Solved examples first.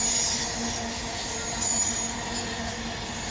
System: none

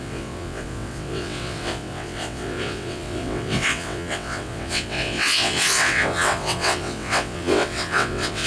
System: vocoder, WaveNeXt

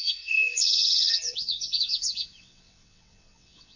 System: vocoder, WaveNeXt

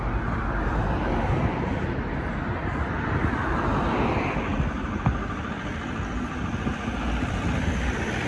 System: none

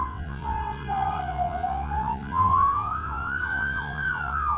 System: vocoder, WaveNeXt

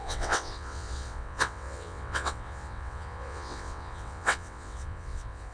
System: vocoder, WaveNeXt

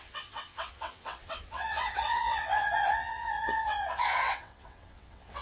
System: vocoder, WaveNeXt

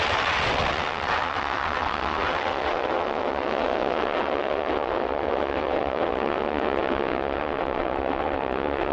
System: vocoder, WaveNeXt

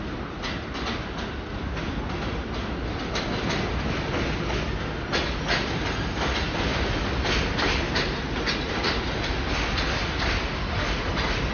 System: none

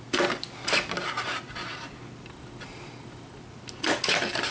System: none